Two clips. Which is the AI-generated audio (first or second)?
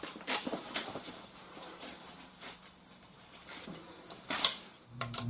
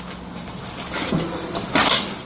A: first